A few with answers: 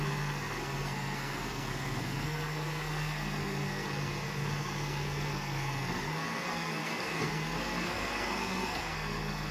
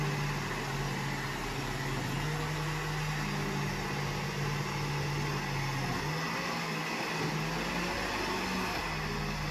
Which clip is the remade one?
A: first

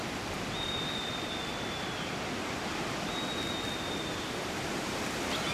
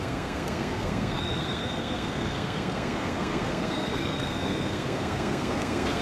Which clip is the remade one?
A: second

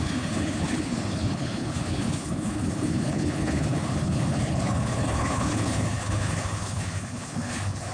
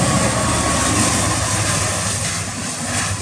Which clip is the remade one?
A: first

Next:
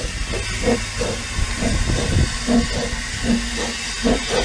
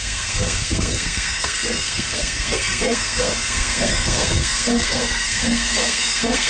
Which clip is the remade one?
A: second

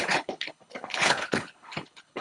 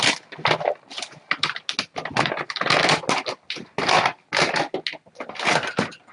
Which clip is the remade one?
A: first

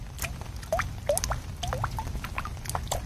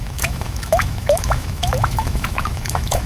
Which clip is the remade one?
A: second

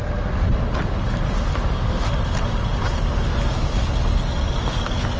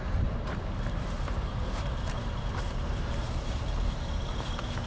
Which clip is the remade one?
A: second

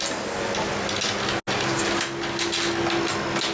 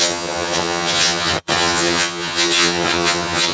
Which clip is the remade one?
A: second